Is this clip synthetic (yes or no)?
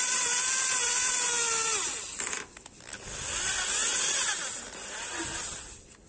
no